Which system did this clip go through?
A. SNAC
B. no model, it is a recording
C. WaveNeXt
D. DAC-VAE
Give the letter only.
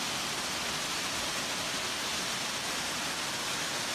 B